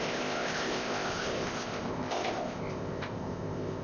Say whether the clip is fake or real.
fake